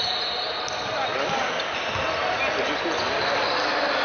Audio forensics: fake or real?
real